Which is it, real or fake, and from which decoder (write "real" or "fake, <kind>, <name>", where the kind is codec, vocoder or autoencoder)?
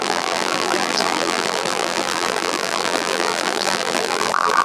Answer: fake, vocoder, BigVGAN v2